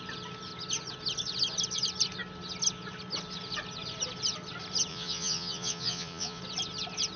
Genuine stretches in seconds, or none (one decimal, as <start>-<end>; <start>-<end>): 0.0-4.9; 6.4-7.2